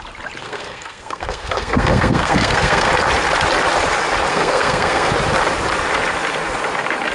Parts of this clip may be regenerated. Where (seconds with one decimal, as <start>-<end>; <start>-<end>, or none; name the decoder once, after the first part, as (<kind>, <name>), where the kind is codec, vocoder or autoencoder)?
0.4-2.9 (codec, SNAC); 4.3-5.1